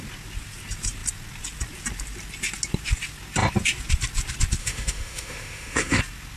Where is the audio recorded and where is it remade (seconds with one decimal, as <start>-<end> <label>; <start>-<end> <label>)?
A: 0.0-4.6 recorded; 4.6-6.0 remade; 6.0-6.4 recorded